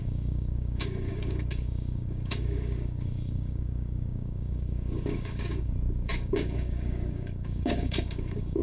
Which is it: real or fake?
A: fake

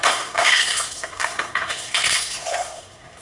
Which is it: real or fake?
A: fake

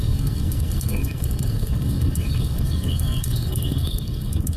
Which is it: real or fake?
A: fake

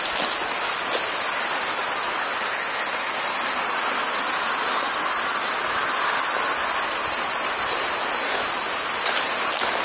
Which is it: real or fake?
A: real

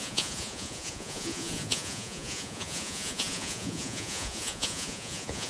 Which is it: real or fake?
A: fake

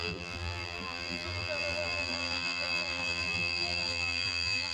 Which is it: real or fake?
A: fake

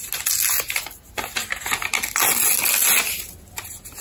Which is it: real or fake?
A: real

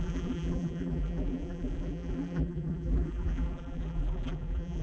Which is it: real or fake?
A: fake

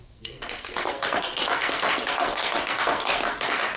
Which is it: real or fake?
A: fake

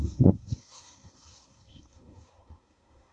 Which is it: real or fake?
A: fake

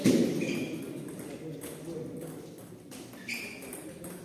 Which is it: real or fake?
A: real